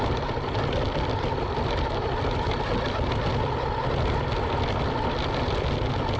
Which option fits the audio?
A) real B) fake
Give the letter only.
A